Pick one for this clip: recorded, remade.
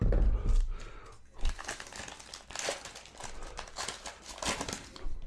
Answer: recorded